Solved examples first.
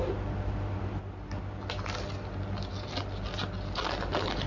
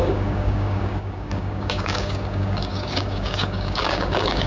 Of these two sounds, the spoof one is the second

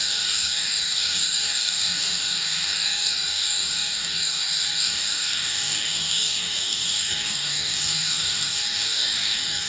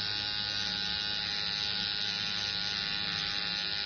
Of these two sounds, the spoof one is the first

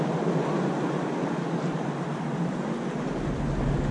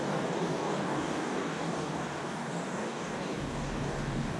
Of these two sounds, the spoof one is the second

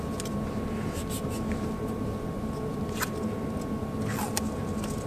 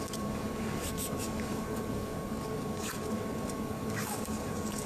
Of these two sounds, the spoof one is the second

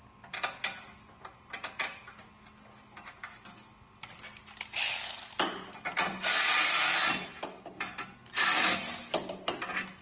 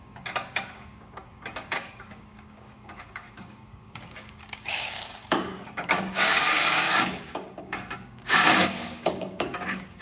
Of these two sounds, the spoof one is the second